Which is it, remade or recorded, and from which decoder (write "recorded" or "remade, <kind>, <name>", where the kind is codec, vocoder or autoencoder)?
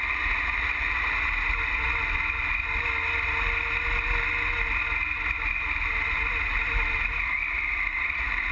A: recorded